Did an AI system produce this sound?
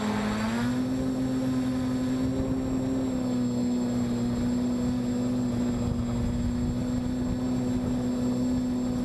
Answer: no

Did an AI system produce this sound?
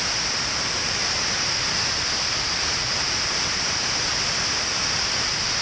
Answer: no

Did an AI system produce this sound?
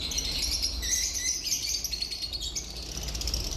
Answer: no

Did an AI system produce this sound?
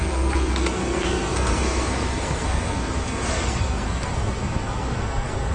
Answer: yes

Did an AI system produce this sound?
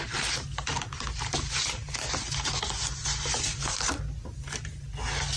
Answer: no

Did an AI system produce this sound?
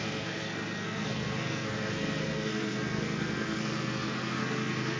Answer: yes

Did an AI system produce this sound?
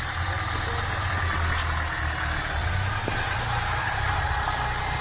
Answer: no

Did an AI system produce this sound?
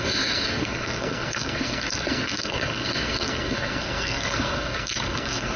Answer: yes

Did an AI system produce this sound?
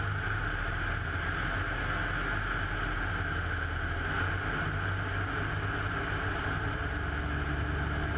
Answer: no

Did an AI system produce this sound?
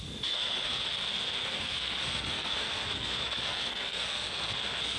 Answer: yes